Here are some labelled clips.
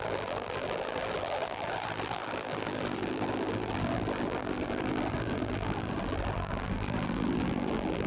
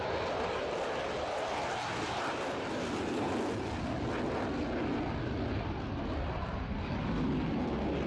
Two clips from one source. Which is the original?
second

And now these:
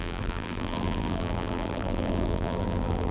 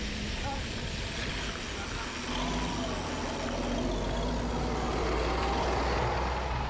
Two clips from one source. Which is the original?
second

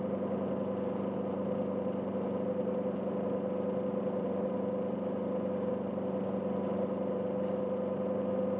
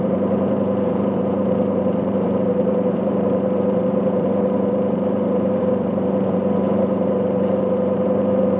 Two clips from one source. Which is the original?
first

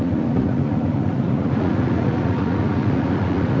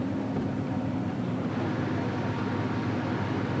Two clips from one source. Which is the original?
second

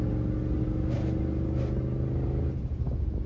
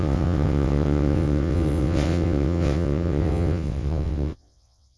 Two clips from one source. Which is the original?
first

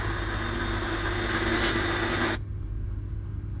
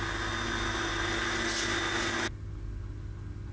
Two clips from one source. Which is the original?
second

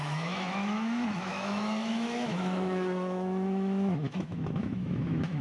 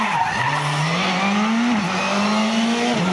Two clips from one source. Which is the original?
second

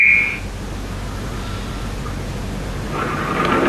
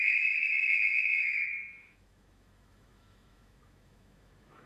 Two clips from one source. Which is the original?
first